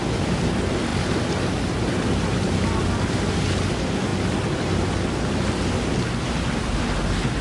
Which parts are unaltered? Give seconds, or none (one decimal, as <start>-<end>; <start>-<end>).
0.0-7.4